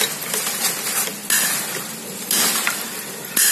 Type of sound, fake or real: real